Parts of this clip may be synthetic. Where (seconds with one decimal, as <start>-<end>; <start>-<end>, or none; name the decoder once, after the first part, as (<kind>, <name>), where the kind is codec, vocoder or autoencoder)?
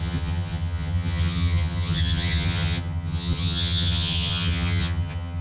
0.0-5.4 (vocoder, HiFi-GAN)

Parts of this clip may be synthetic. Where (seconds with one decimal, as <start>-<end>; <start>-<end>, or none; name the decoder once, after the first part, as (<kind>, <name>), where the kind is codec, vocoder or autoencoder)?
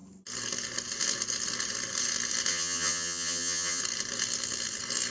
2.5-3.8 (vocoder, HiFi-GAN)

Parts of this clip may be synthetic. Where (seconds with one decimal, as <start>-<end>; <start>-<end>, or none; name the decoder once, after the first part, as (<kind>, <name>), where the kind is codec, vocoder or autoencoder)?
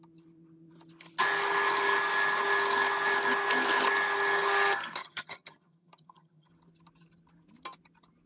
5.0-6.5 (vocoder, HiFi-GAN)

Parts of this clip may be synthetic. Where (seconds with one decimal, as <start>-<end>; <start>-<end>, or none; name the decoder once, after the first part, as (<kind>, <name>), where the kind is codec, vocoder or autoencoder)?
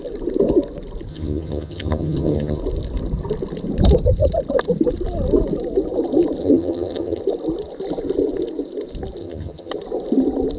1.1-2.6 (vocoder, HiFi-GAN); 6.4-7.2; 9.2-9.7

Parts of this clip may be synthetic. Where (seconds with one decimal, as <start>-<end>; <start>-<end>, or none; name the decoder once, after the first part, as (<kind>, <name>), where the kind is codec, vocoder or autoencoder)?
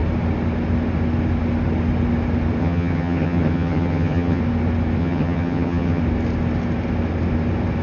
2.6-4.4 (vocoder, HiFi-GAN); 5.0-6.0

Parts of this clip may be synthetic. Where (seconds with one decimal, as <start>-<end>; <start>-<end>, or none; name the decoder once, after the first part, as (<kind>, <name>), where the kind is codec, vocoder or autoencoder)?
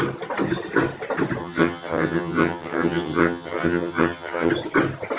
1.4-4.5 (vocoder, HiFi-GAN)